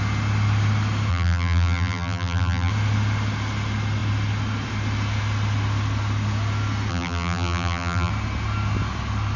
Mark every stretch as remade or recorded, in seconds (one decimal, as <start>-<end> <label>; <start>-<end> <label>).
0.0-1.1 recorded; 1.1-2.7 remade; 2.7-6.9 recorded; 6.9-8.1 remade; 8.1-9.4 recorded